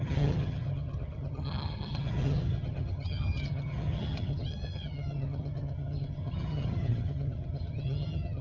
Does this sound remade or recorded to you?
remade